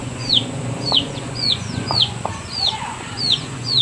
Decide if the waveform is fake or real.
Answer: fake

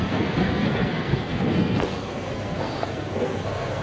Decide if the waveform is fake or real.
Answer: fake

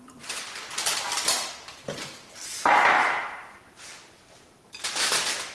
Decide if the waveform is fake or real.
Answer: fake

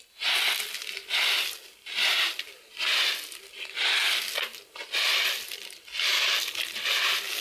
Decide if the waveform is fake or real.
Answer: real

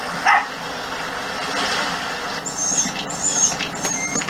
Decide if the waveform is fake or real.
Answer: real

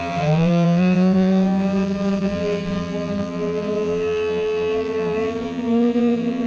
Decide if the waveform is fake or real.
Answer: fake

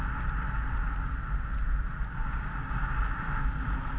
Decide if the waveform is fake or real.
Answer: real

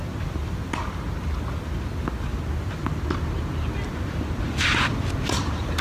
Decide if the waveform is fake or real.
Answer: real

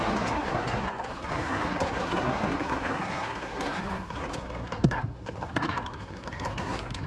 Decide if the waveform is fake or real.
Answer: fake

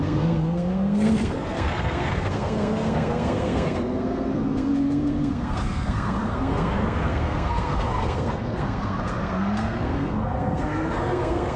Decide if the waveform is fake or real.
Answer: fake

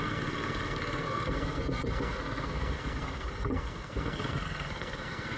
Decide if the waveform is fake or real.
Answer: fake